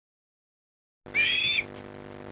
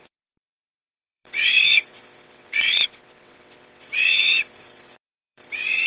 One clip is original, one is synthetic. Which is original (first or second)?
first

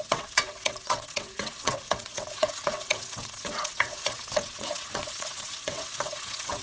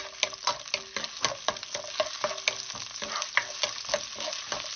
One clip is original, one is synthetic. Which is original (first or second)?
second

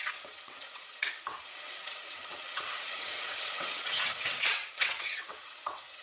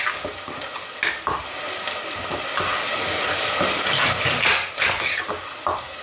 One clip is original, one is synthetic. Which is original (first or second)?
second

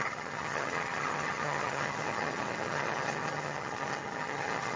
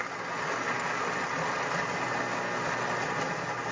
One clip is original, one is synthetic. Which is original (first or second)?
second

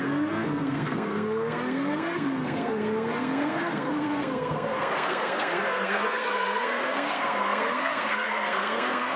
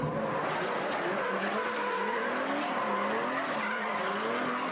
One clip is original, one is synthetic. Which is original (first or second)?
second